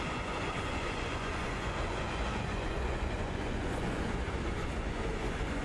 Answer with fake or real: fake